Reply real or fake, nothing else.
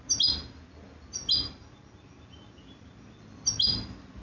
real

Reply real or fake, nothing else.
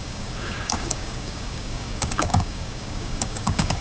fake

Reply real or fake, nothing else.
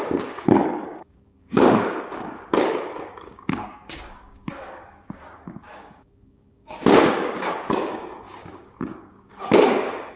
fake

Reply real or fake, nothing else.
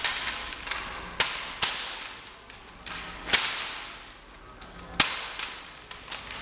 real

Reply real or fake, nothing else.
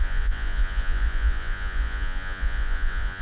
fake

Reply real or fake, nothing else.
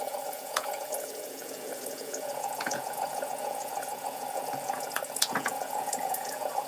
fake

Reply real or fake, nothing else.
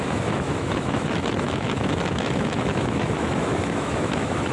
fake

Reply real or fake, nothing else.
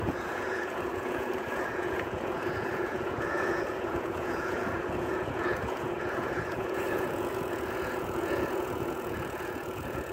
fake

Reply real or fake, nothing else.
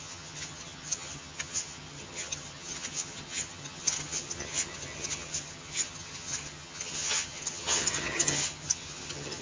fake